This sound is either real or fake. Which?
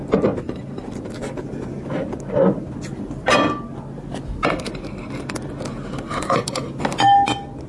real